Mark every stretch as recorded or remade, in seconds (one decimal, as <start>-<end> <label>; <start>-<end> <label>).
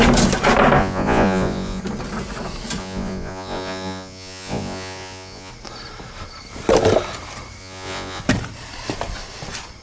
0.0-0.8 recorded; 0.8-1.8 remade; 1.8-2.8 recorded; 2.8-5.5 remade; 5.5-7.6 recorded; 7.6-8.2 remade; 8.2-9.8 recorded